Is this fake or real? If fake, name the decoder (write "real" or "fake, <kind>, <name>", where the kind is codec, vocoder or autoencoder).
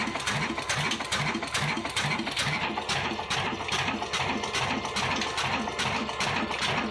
real